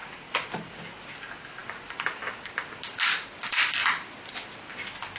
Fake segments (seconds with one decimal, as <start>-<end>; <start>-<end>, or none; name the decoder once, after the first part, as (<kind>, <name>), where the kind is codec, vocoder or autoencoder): none